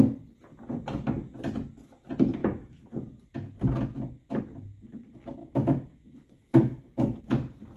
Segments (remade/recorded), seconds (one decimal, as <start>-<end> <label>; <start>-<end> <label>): 0.0-2.4 recorded; 2.4-2.9 remade; 2.9-5.4 recorded; 5.4-7.2 remade; 7.2-7.8 recorded